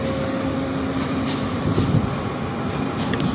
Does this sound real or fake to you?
real